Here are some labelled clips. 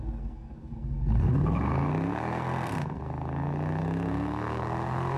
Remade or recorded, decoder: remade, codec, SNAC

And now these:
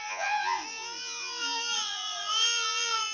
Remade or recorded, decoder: remade, vocoder, Vocos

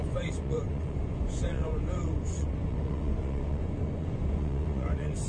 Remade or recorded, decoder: remade, vocoder, Vocos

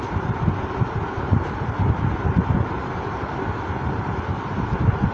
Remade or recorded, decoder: recorded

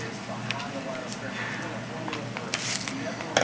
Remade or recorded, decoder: recorded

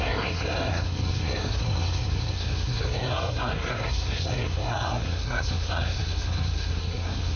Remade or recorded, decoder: remade, codec, SNAC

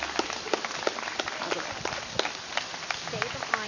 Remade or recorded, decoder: recorded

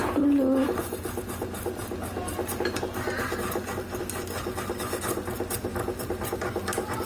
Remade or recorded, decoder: recorded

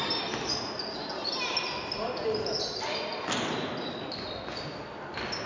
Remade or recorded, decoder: recorded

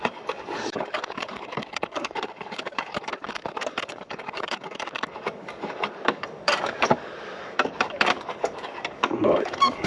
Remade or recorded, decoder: remade, codec, DAC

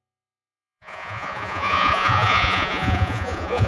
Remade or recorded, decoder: remade, vocoder, Vocos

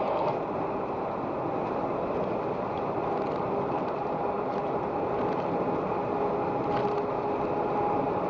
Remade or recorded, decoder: recorded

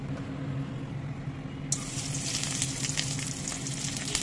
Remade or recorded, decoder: recorded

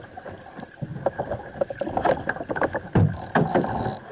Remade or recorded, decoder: recorded